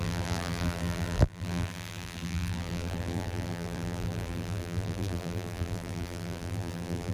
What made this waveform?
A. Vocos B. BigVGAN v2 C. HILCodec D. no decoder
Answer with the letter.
B